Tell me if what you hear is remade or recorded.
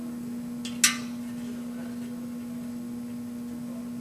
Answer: recorded